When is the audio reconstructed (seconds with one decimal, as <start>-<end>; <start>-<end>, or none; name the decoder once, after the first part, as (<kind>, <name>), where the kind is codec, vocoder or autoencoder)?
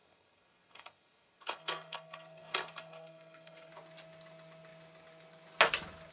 0.0-3.7 (codec, SNAC)